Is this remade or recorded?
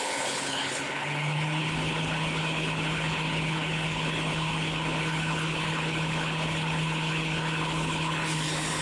remade